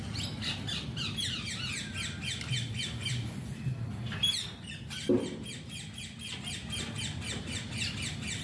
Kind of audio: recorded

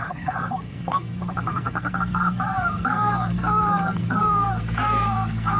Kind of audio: remade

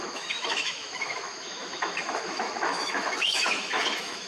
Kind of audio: remade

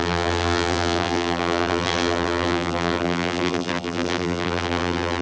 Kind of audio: remade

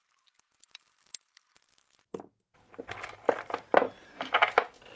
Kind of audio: recorded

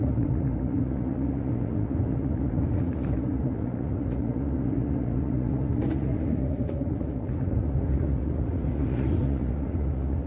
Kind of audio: remade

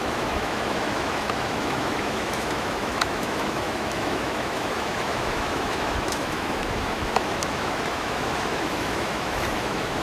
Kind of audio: remade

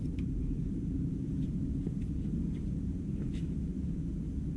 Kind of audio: remade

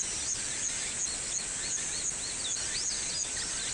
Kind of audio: recorded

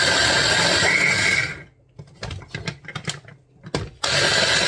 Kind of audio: recorded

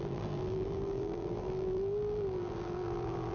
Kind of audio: remade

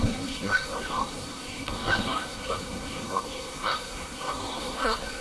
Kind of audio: remade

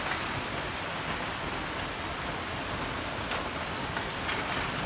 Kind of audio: recorded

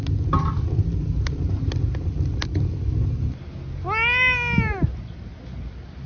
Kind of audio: recorded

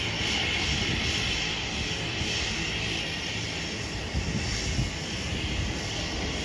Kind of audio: recorded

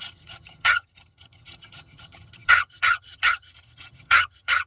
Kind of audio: remade